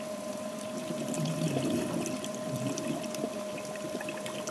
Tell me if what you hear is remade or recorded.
remade